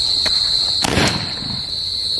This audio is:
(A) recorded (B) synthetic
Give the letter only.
A